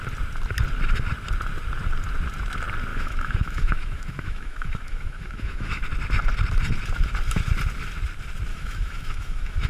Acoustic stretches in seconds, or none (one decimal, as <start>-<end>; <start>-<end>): 0.0-2.9; 5.8-8.5